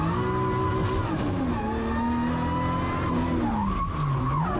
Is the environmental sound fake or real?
real